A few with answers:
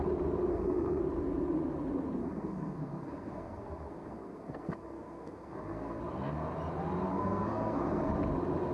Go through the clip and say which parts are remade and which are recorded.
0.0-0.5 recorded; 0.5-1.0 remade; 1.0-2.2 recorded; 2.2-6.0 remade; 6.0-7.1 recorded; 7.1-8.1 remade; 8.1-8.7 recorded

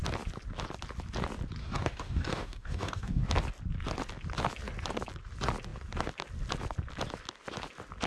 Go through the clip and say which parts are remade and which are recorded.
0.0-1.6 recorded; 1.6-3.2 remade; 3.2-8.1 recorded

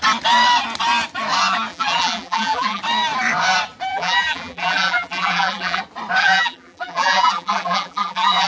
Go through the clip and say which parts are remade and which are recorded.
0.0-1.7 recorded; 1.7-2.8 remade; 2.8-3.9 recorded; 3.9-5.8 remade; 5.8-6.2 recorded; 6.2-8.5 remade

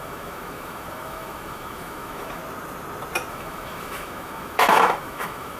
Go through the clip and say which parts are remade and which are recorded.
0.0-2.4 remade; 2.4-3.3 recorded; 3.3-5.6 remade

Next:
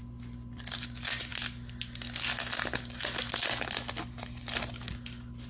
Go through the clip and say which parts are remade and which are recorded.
0.0-5.5 recorded

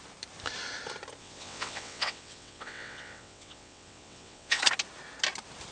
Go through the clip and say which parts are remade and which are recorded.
0.0-1.2 recorded; 1.2-4.6 remade; 4.6-5.7 recorded

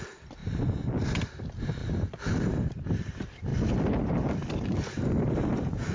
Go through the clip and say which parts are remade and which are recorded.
0.0-5.9 recorded

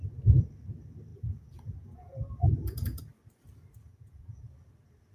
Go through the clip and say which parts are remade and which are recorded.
0.0-1.1 recorded; 1.1-3.0 remade; 3.0-3.9 recorded; 3.9-4.5 remade; 4.5-5.1 recorded